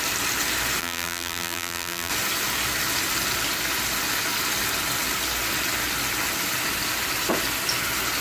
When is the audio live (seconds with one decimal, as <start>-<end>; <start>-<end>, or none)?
0.0-0.8; 2.1-8.2